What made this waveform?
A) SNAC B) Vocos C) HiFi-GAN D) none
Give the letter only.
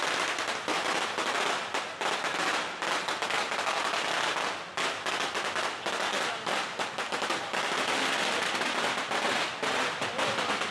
D